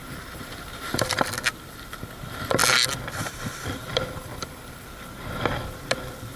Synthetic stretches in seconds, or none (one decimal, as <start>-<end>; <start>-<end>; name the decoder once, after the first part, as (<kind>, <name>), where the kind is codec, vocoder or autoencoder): 0.0-1.3 (vocoder, BigVGAN v2); 3.9-4.8